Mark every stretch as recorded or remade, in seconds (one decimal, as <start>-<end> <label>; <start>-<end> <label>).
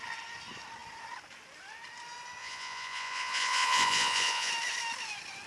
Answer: 0.0-2.4 recorded; 2.4-4.5 remade; 4.5-5.5 recorded